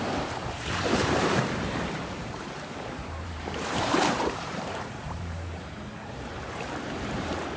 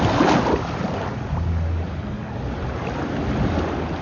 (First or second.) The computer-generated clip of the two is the first